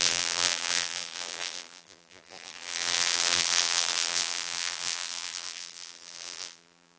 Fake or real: fake